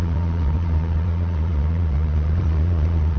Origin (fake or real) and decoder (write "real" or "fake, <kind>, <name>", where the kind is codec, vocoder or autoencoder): fake, vocoder, Vocos